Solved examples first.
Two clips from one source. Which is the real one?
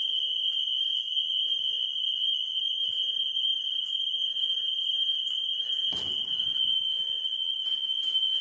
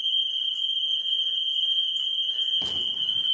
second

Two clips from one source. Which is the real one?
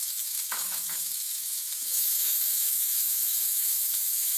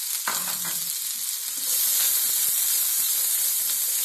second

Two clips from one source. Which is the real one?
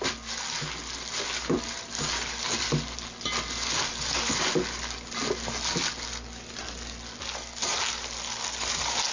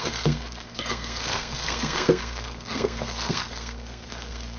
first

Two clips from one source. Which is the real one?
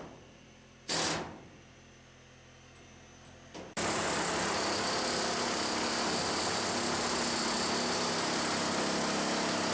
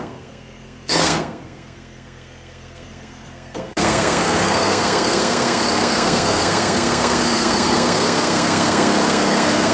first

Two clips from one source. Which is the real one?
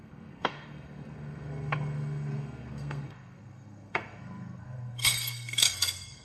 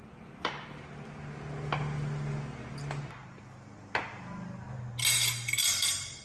second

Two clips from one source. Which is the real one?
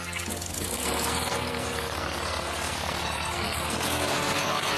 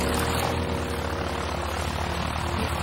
second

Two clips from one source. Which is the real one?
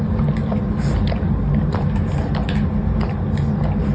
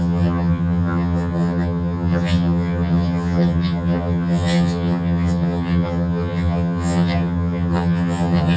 first